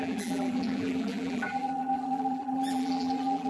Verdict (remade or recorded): remade